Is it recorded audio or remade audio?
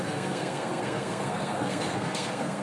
remade